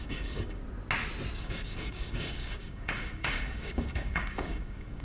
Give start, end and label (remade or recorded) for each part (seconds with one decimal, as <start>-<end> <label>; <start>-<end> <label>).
0.0-0.6 remade; 0.6-1.4 recorded; 1.4-5.0 remade